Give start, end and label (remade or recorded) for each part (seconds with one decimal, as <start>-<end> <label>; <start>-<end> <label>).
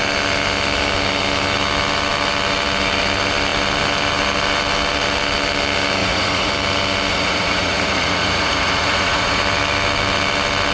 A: 0.0-6.0 recorded; 6.0-6.5 remade; 6.5-7.1 recorded; 7.1-9.4 remade; 9.4-10.7 recorded